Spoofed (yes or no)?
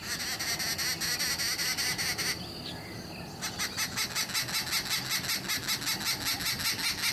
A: no